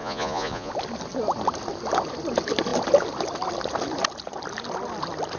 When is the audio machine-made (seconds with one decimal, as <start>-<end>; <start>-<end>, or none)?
0.0-0.7